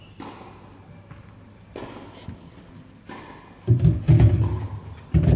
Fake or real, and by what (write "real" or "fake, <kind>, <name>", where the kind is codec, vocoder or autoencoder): real